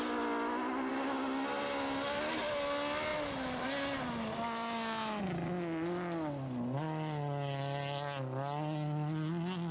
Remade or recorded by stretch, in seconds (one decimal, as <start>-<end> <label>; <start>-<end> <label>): 0.0-9.7 recorded